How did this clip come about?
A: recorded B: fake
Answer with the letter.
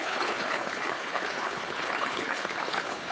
B